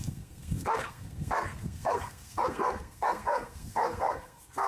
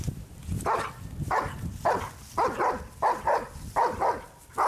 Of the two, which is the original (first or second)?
second